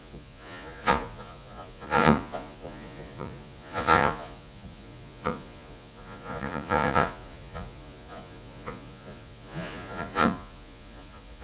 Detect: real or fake fake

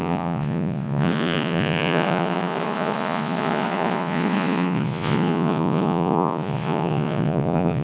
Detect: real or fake fake